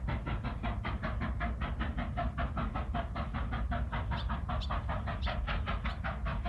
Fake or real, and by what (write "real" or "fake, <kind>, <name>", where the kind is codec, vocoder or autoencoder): real